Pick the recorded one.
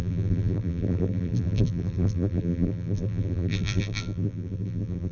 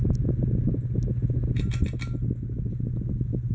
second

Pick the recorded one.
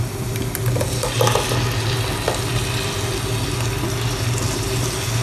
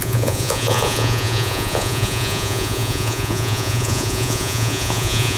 first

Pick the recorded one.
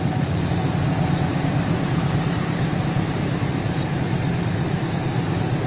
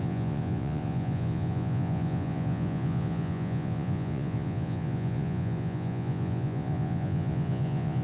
first